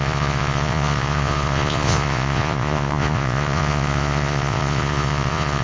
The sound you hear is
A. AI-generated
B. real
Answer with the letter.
A